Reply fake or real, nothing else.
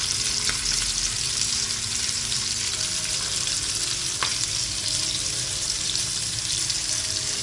fake